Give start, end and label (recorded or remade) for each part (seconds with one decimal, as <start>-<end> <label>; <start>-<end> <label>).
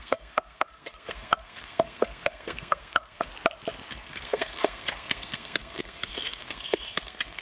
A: 0.0-3.3 remade; 3.3-3.9 recorded; 3.9-7.4 remade